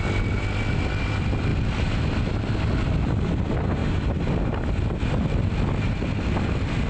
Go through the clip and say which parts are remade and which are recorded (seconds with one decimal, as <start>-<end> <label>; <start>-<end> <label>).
0.0-6.9 recorded